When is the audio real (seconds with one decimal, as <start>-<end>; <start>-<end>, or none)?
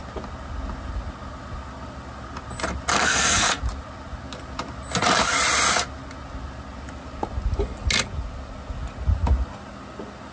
0.0-2.9; 3.6-10.3